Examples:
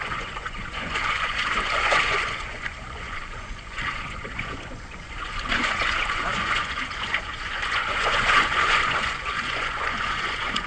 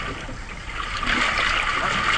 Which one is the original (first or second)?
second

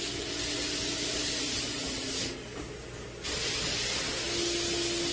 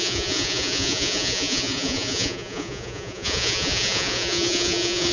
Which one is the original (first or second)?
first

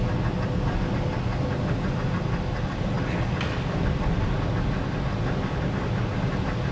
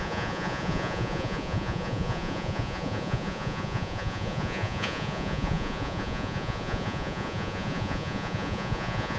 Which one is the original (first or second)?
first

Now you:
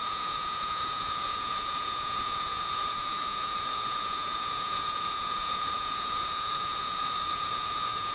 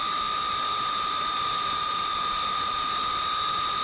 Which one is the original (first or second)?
second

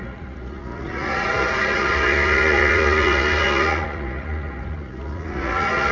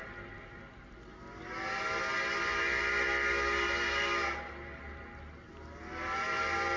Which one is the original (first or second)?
second